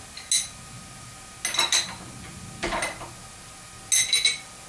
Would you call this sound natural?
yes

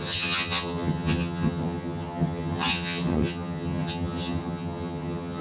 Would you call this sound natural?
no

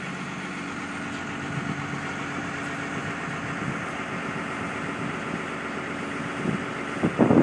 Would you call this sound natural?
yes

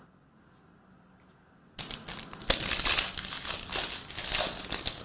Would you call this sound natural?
yes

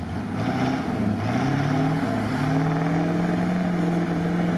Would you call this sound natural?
yes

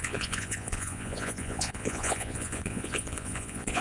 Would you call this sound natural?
no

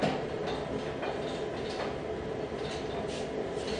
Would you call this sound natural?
yes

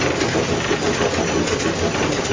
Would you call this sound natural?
yes